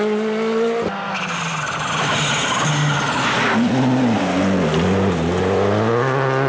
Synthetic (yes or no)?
no